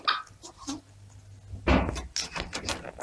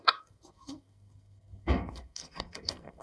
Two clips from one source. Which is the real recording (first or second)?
first